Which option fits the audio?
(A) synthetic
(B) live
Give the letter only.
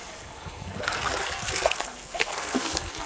A